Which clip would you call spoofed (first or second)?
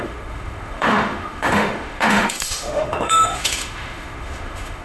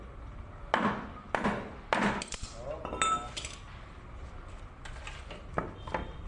first